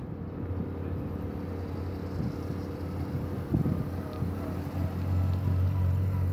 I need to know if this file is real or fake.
real